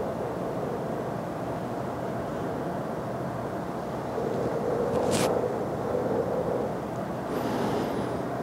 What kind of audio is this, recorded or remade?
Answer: recorded